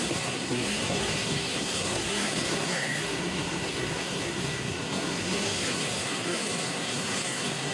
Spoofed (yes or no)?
yes